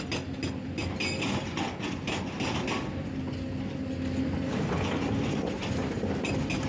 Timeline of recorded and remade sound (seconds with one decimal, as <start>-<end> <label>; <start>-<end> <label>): 0.0-6.7 recorded